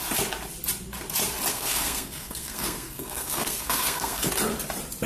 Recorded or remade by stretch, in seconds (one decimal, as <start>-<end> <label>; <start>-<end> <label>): 0.0-1.5 recorded; 1.5-4.3 remade; 4.3-5.1 recorded